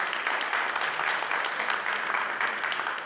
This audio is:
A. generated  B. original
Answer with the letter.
B